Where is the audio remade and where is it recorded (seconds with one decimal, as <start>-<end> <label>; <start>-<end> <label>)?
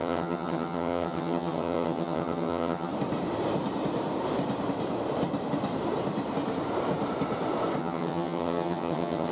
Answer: 0.0-2.9 remade; 2.9-7.8 recorded; 7.8-9.3 remade